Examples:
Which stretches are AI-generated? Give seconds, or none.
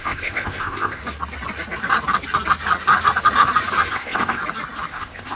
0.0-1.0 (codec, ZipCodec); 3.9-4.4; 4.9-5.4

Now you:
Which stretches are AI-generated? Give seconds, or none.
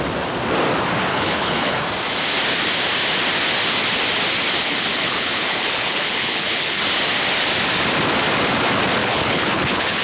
1.1-1.8 (codec, HILCodec); 4.6-6.8; 9.0-10.0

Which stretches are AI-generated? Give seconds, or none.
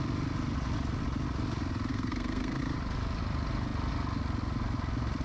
1.9-2.6 (codec, SNAC)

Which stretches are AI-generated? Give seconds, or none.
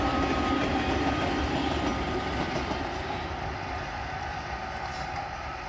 0.0-1.9 (vocoder, BigVGAN v2); 3.0-5.7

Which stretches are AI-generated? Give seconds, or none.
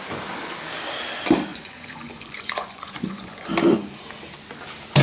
1.5-3.5 (vocoder, Vocos)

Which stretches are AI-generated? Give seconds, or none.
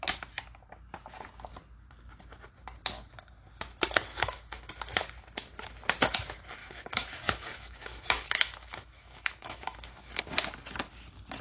4.1-4.7 (autoencoder, DAC-VAE); 6.6-10.2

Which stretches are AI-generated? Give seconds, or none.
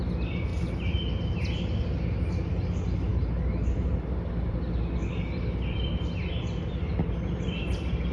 none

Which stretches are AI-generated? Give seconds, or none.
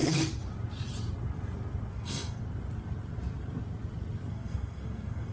1.9-2.4 (codec, SNAC); 4.3-5.3